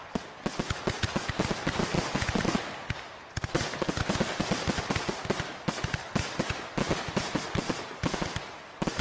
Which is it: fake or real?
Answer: real